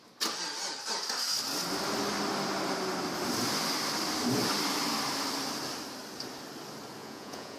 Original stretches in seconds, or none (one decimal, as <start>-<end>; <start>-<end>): 0.0-7.0